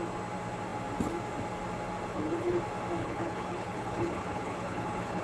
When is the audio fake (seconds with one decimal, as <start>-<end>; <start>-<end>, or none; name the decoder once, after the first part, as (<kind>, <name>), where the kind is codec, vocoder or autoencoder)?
2.1-2.6 (codec, HILCodec); 3.0-5.2